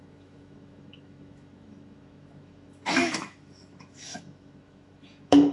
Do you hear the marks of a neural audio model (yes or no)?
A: yes